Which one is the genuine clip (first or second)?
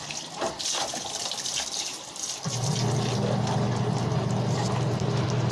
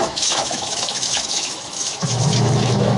first